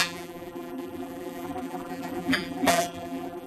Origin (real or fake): fake